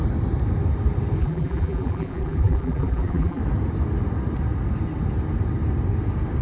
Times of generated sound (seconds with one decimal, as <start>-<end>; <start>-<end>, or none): 1.2-3.4